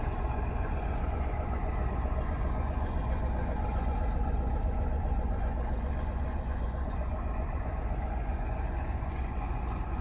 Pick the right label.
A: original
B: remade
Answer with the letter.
B